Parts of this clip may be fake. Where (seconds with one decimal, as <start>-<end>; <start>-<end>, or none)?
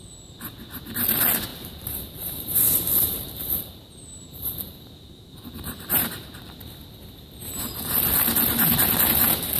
1.5-6.5